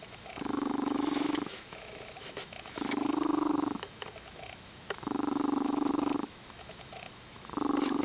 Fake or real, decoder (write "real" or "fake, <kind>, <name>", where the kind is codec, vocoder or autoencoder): fake, autoencoder, DAC-VAE